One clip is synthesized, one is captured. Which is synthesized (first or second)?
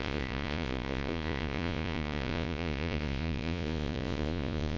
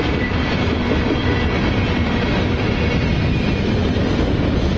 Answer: first